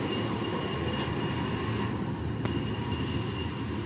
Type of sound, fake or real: real